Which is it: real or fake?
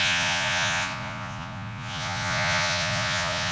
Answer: fake